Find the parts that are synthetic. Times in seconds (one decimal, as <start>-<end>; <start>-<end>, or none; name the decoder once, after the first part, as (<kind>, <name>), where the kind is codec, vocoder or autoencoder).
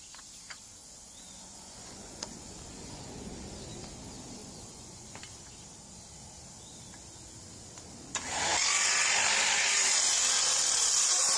0.8-3.3 (vocoder, Vocos); 4.4-5.2